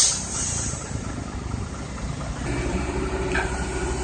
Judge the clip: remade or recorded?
remade